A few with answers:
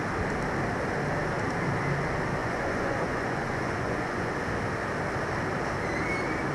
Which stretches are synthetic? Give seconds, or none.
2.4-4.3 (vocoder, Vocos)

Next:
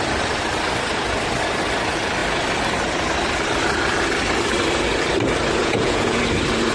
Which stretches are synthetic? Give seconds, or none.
5.6-6.2 (vocoder, Vocos)

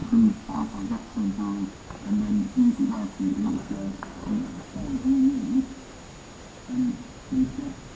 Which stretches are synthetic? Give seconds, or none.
0.0-1.2 (codec, SNAC); 3.3-4.6

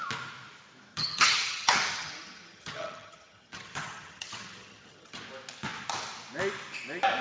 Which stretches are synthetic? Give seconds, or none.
0.9-5.2 (vocoder, HiFi-GAN)

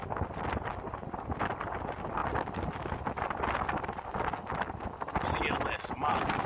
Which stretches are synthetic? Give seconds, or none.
none

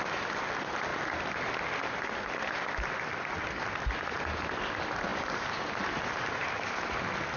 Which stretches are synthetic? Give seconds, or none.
none

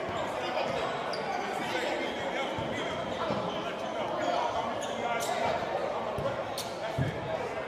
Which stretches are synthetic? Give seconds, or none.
none